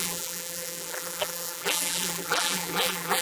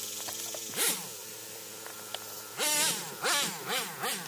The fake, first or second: first